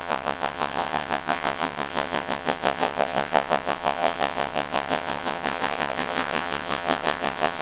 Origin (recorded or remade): remade